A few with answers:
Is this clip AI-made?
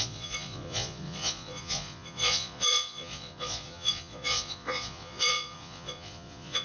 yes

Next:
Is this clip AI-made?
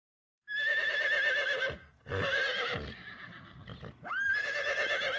no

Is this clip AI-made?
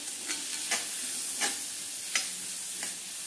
no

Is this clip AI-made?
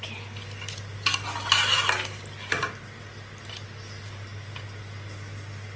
no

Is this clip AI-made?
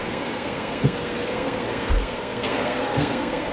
yes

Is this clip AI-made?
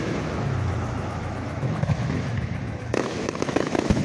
yes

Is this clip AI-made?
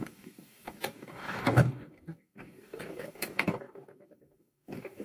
yes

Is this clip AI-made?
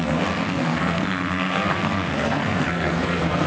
yes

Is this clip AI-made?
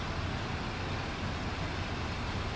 no